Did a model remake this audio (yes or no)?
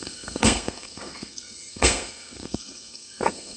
yes